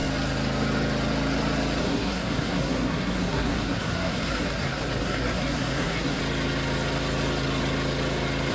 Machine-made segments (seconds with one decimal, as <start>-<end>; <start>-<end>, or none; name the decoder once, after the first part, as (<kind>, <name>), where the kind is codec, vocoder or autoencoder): 1.8-6.2 (codec, SNAC)